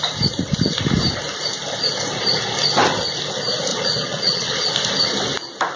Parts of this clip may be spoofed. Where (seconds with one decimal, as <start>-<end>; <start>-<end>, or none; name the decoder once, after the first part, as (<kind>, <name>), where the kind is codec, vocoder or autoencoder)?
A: 3.7-4.7 (vocoder, Vocos)